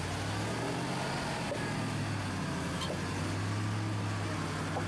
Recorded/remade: recorded